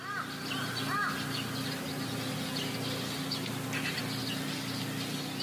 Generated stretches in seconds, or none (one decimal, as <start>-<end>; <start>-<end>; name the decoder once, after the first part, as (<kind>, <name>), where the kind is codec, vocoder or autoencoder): none